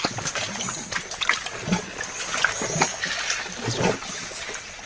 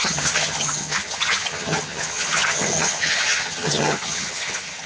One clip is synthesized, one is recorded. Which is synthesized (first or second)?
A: second